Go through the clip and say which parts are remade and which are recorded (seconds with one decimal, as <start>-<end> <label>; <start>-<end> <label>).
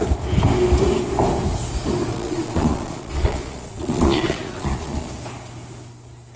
0.0-2.1 recorded; 2.1-5.1 remade; 5.1-6.4 recorded